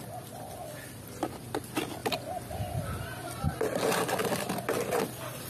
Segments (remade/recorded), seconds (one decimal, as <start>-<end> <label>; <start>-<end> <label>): 0.0-4.2 recorded; 4.2-5.0 remade; 5.0-5.5 recorded